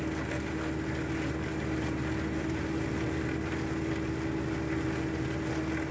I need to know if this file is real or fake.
real